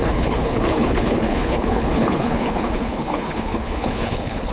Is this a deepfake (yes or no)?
yes